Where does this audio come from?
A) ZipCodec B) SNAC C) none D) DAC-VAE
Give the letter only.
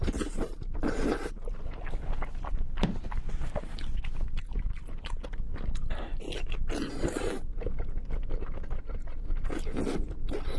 C